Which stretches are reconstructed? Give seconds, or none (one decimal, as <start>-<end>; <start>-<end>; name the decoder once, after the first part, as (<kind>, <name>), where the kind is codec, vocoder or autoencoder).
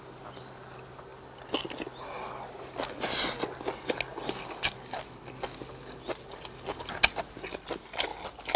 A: none